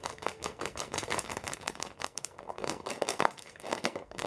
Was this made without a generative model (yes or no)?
no